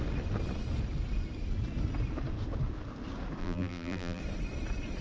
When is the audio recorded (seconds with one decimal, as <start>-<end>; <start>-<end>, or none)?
0.0-3.4; 4.2-5.0